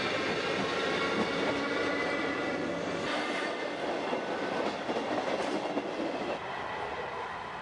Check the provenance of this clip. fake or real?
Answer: real